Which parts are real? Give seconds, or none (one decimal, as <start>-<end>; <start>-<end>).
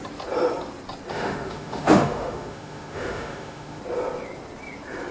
0.0-1.1; 3.8-5.1